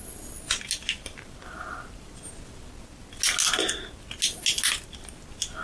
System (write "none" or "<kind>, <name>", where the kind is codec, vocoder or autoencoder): none